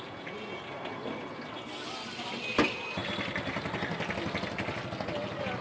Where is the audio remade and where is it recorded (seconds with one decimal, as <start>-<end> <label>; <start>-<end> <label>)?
0.0-5.6 recorded